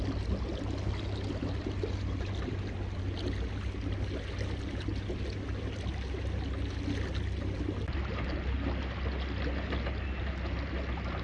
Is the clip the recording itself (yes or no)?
yes